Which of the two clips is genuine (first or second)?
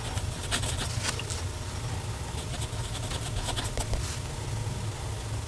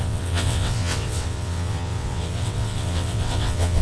first